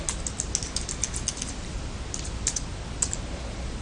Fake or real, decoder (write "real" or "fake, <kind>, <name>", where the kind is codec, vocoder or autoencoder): real